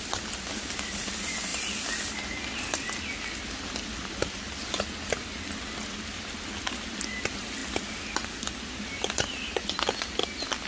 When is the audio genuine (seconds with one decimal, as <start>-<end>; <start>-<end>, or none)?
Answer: 0.0-10.7